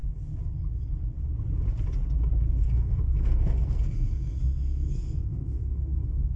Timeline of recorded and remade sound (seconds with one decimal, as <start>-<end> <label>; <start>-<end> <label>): 0.0-2.6 recorded; 2.6-6.4 remade